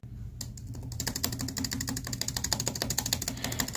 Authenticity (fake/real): real